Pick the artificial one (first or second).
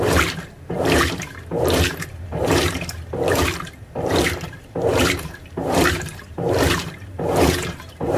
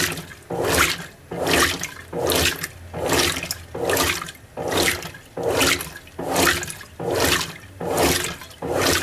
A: first